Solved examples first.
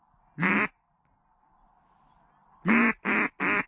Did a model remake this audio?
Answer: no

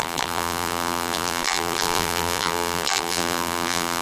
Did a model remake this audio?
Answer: yes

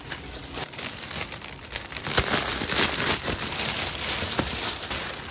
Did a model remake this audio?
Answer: no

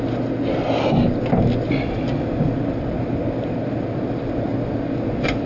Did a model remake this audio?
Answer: no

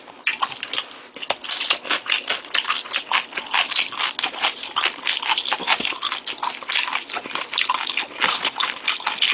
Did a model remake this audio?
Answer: no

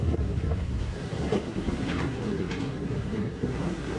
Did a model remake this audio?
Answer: yes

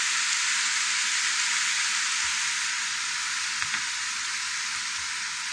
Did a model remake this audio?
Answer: no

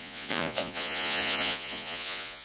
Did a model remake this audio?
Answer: yes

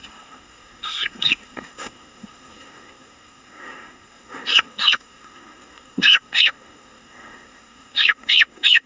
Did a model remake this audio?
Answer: yes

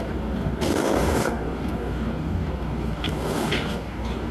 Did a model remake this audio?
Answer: yes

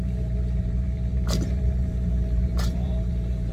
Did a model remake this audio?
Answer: yes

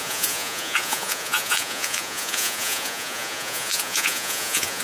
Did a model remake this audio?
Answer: yes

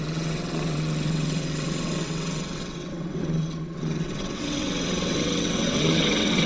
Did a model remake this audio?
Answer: yes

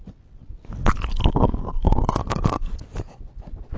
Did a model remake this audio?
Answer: no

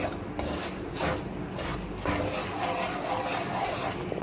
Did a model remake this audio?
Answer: no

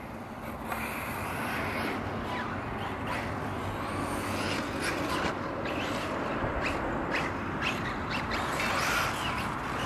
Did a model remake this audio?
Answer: no